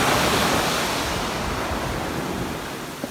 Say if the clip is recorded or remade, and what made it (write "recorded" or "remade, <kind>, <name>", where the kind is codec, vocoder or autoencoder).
recorded